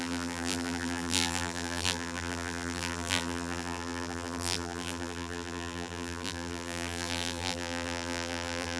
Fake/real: fake